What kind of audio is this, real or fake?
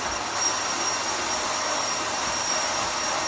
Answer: fake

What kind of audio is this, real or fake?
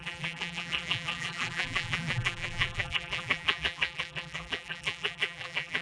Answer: fake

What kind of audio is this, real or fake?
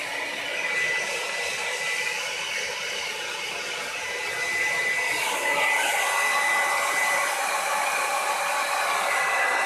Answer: real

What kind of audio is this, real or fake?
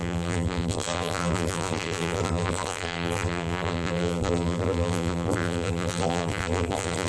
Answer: fake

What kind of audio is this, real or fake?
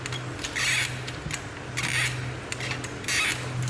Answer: real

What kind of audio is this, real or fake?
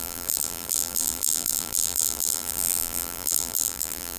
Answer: fake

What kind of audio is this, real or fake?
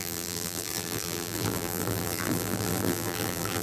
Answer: fake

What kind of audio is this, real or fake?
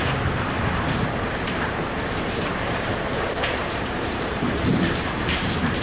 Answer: fake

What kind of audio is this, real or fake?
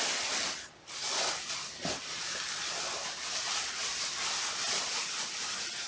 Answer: fake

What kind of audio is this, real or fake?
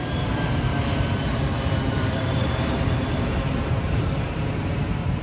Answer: fake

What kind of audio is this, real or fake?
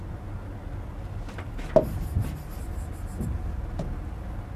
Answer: real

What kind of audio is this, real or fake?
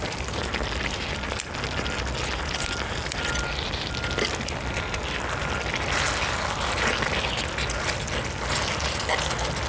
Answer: real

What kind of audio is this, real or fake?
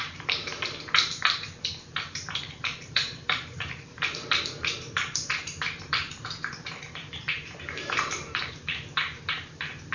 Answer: fake